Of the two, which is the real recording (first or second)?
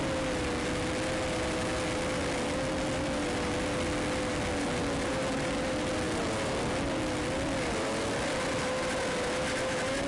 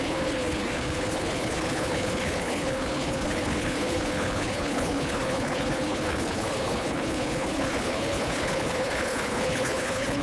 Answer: first